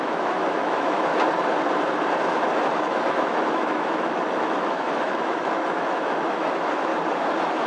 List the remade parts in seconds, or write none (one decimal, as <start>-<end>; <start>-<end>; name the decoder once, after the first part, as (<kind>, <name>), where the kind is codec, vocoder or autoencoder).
0.0-1.1 (autoencoder, DAC-VAE); 2.6-6.9